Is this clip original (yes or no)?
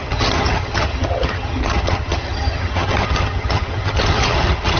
no